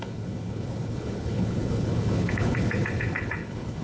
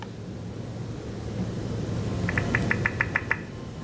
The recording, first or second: second